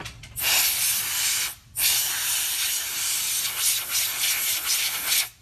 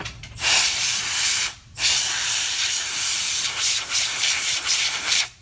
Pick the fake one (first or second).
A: second